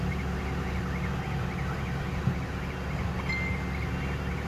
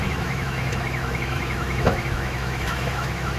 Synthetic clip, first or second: second